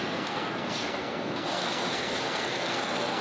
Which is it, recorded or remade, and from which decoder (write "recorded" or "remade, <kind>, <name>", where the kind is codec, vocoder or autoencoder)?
remade, codec, SNAC